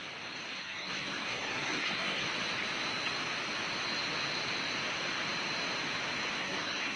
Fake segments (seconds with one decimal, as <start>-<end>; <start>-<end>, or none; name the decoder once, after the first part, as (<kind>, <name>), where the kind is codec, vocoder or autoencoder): 0.6-2.2 (codec, SNAC); 6.4-7.0